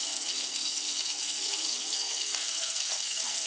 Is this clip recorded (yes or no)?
no